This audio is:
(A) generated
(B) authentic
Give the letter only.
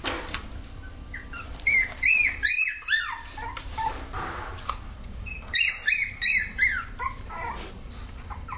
A